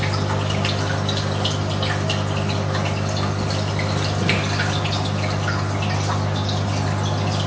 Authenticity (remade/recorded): recorded